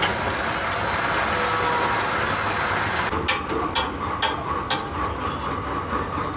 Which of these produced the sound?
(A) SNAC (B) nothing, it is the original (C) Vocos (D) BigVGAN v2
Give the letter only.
B